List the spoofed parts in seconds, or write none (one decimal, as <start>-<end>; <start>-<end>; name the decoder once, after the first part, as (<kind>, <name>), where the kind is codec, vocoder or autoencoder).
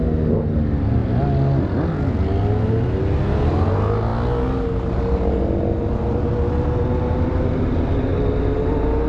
none